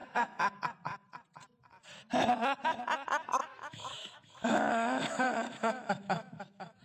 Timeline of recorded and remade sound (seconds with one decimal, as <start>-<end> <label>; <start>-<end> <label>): 0.0-0.6 remade; 0.6-3.5 recorded; 3.5-6.8 remade